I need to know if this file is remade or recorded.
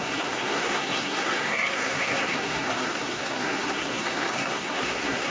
remade